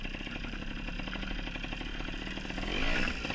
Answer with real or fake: real